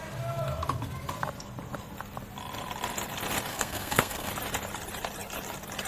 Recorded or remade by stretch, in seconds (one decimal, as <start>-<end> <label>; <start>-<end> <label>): 0.0-3.5 recorded; 3.5-4.3 remade; 4.3-5.9 recorded